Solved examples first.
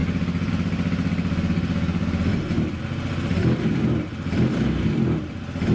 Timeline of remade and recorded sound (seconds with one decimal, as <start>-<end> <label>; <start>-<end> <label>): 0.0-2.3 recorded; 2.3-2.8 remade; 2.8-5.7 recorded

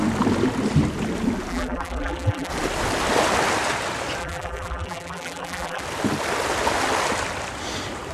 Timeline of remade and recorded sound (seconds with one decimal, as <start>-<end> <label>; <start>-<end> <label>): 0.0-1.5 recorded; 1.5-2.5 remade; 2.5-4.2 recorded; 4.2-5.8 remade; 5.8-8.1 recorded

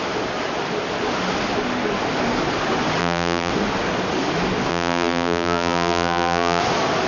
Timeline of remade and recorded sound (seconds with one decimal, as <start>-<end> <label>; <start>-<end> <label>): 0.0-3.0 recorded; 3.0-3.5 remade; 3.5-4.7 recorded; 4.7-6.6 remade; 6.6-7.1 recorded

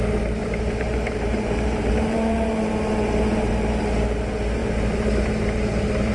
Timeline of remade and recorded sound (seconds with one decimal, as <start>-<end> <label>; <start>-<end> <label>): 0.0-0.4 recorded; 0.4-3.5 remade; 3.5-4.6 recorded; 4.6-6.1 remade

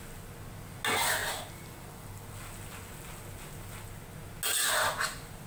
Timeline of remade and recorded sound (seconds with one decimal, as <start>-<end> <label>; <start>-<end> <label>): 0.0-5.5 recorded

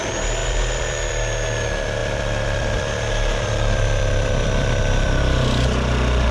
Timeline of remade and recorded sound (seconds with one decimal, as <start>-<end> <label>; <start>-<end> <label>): 0.0-0.4 recorded; 0.4-1.1 remade; 1.1-2.0 recorded; 2.0-5.2 remade; 5.2-6.3 recorded

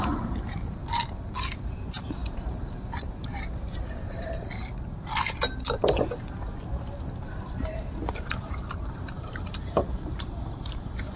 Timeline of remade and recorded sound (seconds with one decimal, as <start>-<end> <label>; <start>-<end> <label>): 0.0-0.8 remade; 0.8-1.5 recorded; 1.5-4.6 remade; 4.6-7.4 recorded; 7.4-11.2 remade